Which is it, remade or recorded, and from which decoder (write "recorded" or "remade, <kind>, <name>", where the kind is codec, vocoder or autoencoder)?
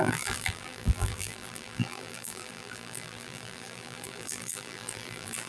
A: remade, vocoder, BigVGAN v2